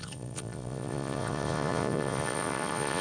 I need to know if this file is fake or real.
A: fake